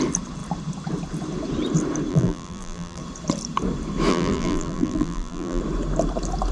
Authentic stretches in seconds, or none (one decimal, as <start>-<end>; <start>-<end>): 0.0-2.1; 3.0-4.1; 5.6-6.5